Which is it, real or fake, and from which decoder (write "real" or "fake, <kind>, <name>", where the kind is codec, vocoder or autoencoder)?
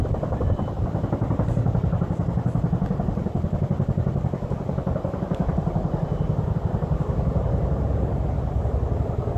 real